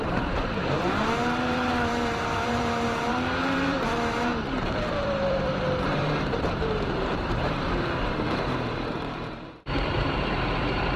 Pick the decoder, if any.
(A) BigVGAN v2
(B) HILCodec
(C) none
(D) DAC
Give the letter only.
A